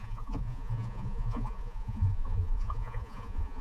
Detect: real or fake fake